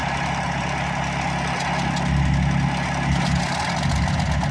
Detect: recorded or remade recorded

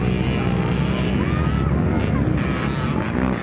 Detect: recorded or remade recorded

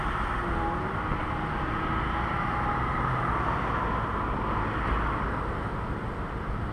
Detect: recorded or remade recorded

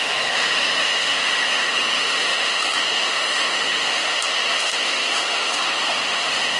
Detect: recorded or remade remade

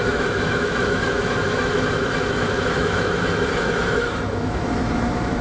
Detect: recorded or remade remade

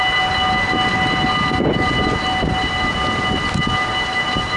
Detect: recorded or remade recorded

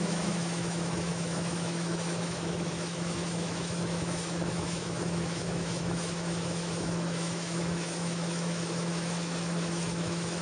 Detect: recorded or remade remade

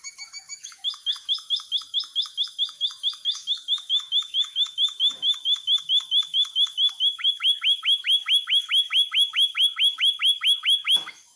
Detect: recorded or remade remade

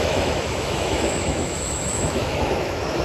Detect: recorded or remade remade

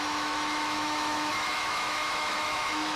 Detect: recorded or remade remade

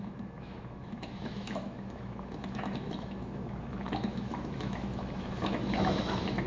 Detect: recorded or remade remade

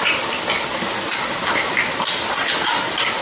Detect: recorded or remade recorded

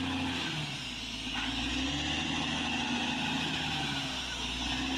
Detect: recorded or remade recorded